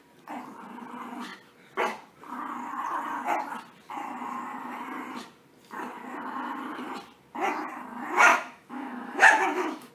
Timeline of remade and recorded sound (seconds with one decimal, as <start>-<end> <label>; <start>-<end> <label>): 0.0-8.3 recorded; 8.3-9.9 remade